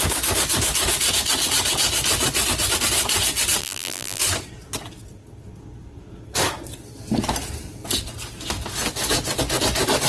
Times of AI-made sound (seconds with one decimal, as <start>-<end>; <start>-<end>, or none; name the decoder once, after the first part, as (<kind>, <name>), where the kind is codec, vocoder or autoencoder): 3.6-4.2 (vocoder, BigVGAN v2)